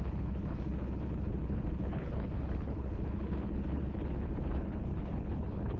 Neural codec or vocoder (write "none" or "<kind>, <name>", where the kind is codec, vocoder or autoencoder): codec, HILCodec